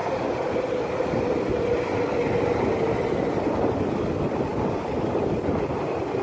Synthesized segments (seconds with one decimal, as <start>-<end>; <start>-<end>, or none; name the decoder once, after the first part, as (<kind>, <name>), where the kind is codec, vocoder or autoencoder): 4.5-5.2 (vocoder, BigVGAN v2)